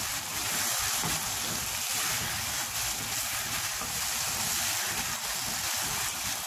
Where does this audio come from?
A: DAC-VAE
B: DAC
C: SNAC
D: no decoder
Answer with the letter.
D